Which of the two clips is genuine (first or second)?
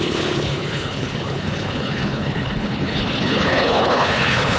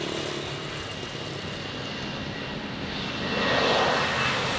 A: second